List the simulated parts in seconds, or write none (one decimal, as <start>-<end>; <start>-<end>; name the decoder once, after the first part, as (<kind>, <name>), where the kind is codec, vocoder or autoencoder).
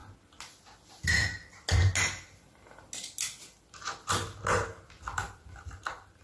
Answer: none